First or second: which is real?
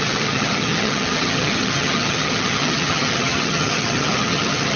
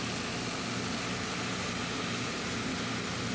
second